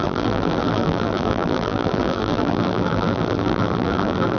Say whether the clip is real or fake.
fake